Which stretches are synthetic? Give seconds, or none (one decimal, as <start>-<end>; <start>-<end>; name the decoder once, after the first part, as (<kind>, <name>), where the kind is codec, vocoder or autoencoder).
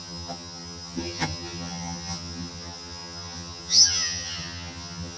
0.0-5.2 (vocoder, HiFi-GAN)